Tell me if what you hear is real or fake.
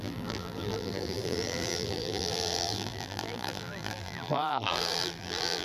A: fake